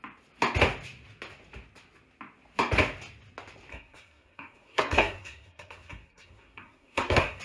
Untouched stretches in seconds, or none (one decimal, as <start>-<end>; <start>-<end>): 0.0-3.7

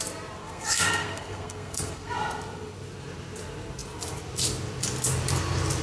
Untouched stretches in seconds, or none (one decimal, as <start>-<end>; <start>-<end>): 0.0-0.4; 2.1-5.8

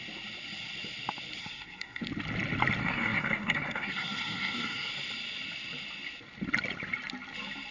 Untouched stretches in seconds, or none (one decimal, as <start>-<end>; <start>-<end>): 0.0-1.4; 2.0-2.8; 4.9-7.7